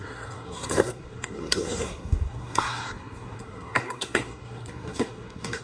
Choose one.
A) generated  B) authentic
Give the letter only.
A